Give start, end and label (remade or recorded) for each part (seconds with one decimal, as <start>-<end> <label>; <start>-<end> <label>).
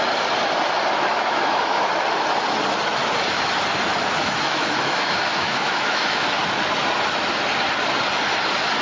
0.0-1.1 recorded; 1.1-1.9 remade; 1.9-4.2 recorded; 4.2-6.4 remade; 6.4-8.8 recorded